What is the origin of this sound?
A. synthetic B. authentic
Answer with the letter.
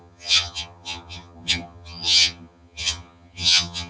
A